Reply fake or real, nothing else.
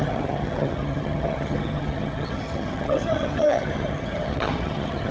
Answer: fake